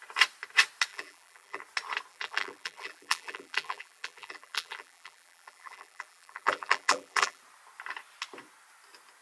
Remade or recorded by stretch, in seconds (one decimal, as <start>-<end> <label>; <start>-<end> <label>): 0.0-0.9 recorded; 0.9-1.6 remade; 1.6-2.1 recorded; 2.1-7.4 remade; 7.4-9.2 recorded